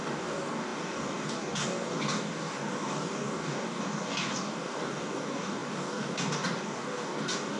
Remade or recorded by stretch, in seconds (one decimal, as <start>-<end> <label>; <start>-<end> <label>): 0.0-7.6 remade